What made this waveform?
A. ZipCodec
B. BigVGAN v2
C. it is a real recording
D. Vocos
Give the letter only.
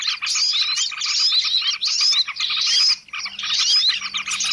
C